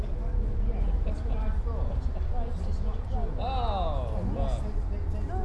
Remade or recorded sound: recorded